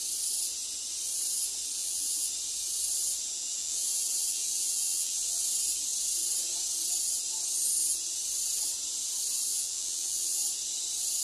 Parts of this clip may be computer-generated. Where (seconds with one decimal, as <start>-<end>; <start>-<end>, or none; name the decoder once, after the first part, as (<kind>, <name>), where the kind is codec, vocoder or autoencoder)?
1.8-2.3 (vocoder, BigVGAN v2); 3.6-5.4; 9.5-10.4

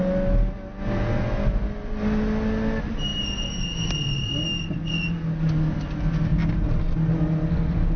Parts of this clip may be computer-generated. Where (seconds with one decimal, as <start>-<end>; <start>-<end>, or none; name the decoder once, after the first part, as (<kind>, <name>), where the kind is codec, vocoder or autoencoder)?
6.3-6.9 (vocoder, BigVGAN v2)

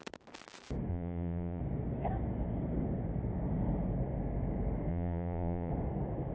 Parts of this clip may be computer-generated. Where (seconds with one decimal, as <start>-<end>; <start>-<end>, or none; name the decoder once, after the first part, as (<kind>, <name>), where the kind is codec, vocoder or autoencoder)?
0.9-1.6 (vocoder, Vocos); 4.9-5.7

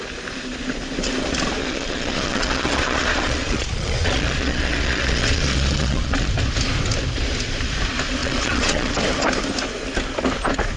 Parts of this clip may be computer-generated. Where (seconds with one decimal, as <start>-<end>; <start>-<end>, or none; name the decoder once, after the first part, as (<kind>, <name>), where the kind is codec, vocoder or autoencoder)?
1.6-6.3 (vocoder, Vocos); 8.2-8.9

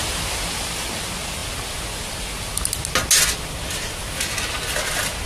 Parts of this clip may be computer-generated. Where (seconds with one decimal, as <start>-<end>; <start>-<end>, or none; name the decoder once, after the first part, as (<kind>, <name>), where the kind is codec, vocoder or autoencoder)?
none

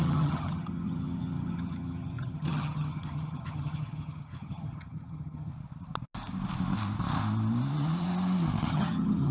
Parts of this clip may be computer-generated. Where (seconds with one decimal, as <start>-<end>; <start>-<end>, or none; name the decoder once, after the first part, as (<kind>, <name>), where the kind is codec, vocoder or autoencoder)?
0.0-5.5 (vocoder, HiFi-GAN); 8.7-9.3

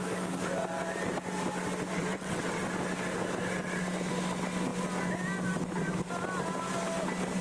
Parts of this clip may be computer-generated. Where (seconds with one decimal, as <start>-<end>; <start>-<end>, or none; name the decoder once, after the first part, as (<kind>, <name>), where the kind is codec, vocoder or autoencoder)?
1.9-2.7 (vocoder, WaveNeXt)

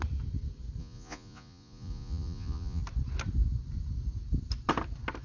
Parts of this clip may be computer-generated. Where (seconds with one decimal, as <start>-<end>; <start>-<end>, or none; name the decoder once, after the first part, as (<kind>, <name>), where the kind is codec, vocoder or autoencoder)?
0.8-2.8 (vocoder, Vocos)